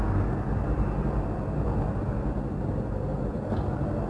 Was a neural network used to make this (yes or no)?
no